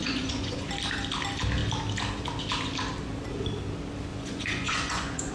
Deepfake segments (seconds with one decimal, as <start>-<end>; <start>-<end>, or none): 0.0-0.7; 4.1-5.3